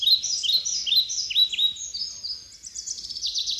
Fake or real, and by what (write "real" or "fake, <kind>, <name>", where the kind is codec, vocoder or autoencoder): real